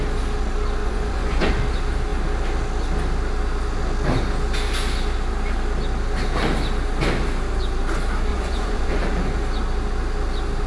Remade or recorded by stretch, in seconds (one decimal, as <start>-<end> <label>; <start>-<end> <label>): 0.0-0.8 recorded; 0.8-1.5 remade; 1.5-8.3 recorded; 8.3-9.0 remade; 9.0-10.7 recorded